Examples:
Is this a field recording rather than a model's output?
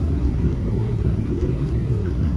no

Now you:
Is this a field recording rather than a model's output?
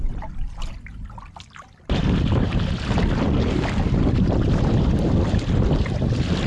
yes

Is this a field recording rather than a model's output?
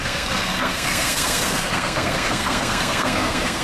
no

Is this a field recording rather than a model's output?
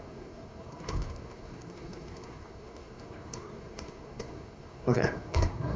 no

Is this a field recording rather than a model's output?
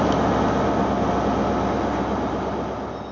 yes